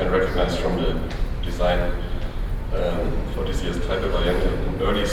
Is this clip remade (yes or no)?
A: yes